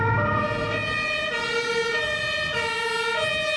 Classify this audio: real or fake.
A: real